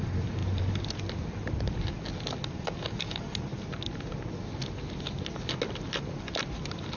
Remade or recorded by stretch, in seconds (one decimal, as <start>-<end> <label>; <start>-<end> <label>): 0.0-0.4 recorded; 0.4-1.7 remade; 1.7-7.0 recorded